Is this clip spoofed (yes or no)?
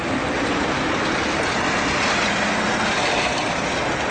no